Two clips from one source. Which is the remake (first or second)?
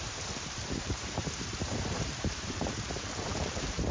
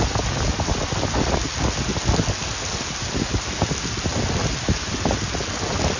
first